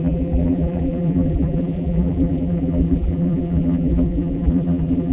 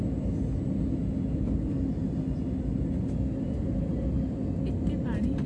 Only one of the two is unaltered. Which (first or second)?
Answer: second